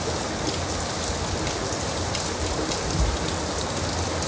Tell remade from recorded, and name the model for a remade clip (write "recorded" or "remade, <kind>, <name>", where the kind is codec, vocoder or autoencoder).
recorded